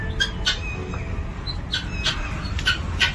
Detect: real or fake real